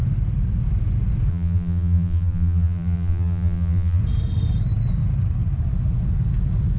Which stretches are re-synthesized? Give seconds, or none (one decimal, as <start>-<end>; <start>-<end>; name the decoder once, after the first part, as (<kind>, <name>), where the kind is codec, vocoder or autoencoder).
1.3-4.0 (vocoder, BigVGAN v2)